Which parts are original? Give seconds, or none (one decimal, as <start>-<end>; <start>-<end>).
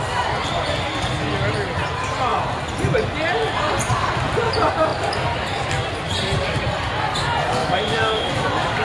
0.0-7.6; 8.3-8.8